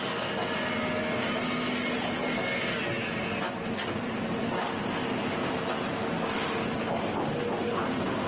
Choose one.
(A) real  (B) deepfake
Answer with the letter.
A